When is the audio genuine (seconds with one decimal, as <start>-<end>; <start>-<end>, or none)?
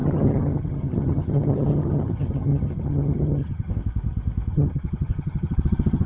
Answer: 3.7-4.5